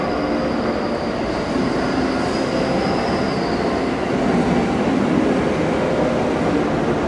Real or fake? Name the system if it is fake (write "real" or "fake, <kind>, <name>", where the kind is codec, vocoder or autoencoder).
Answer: real